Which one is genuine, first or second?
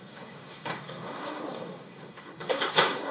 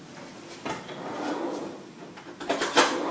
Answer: second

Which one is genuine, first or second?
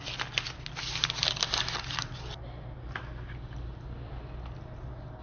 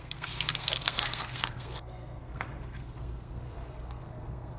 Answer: first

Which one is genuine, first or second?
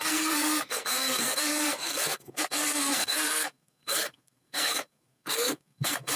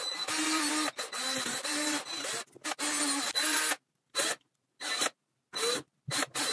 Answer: second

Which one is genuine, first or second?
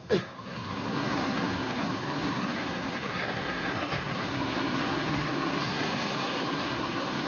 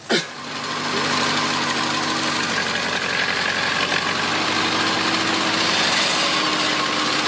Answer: second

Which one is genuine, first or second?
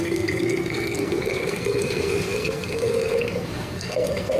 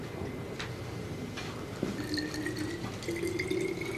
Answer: second